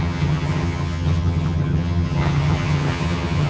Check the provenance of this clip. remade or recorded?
remade